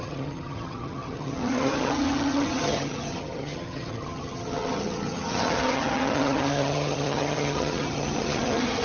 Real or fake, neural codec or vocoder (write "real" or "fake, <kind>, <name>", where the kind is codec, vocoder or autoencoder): fake, vocoder, HiFi-GAN